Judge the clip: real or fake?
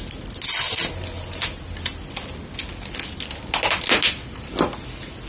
real